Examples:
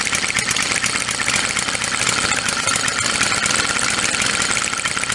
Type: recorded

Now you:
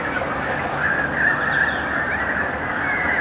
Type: recorded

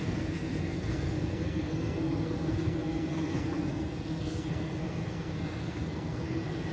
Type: remade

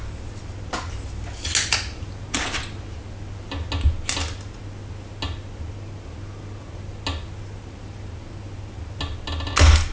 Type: recorded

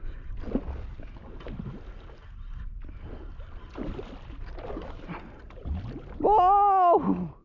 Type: recorded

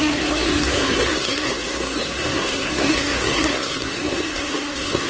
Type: remade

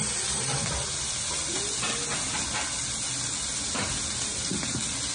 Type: recorded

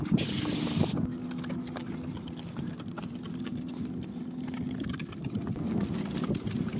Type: recorded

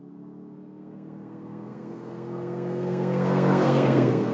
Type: remade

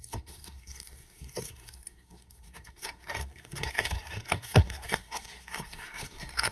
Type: remade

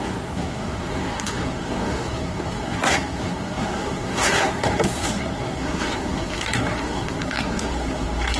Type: remade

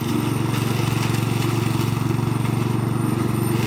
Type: recorded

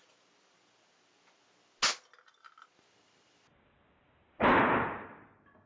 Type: recorded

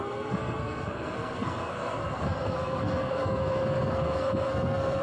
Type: remade